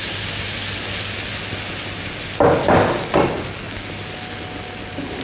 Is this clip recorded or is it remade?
recorded